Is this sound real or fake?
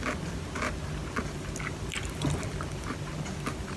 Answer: real